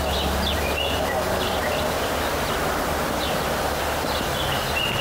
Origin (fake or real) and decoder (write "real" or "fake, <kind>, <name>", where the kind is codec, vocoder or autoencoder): fake, vocoder, BigVGAN v2